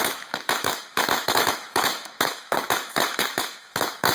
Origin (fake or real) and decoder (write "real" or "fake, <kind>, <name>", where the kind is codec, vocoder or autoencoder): fake, autoencoder, DAC-VAE